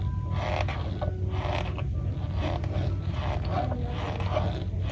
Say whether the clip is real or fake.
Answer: real